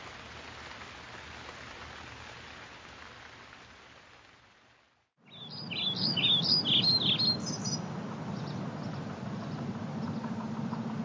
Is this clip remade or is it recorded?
recorded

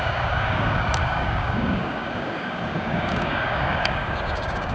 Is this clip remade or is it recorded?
remade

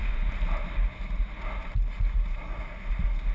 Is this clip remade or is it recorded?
recorded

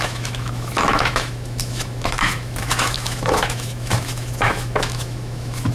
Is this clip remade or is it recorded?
remade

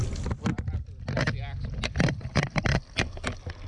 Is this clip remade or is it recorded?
recorded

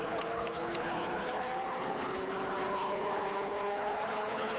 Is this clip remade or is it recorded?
remade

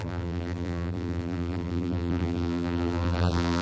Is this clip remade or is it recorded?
remade